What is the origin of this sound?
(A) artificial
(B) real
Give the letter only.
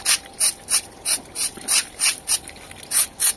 B